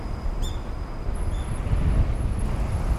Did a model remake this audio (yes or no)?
no